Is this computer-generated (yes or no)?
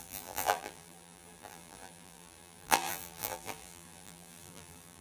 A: yes